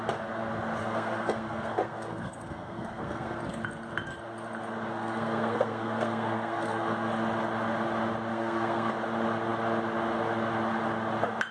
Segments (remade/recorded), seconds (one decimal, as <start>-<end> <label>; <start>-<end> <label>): 0.0-0.8 recorded; 0.8-3.4 remade; 3.4-4.9 recorded; 4.9-7.1 remade; 7.1-8.3 recorded; 8.3-8.9 remade; 8.9-11.5 recorded